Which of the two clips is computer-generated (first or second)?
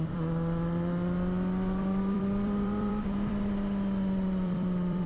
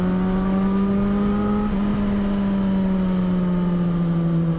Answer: first